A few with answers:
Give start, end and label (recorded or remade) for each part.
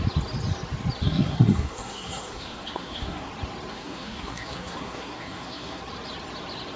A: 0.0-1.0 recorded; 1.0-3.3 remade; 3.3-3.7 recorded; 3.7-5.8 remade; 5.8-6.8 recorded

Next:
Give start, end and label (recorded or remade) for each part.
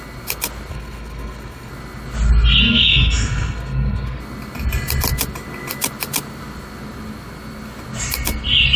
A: 0.0-0.7 recorded; 0.7-1.7 remade; 1.7-2.6 recorded; 2.6-4.2 remade; 4.2-8.8 recorded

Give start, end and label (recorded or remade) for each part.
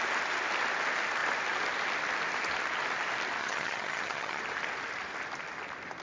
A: 0.0-3.4 recorded; 3.4-4.4 remade; 4.4-6.0 recorded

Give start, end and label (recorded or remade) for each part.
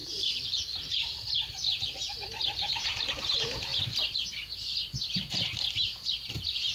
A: 0.0-3.7 remade; 3.7-4.3 recorded; 4.3-6.7 remade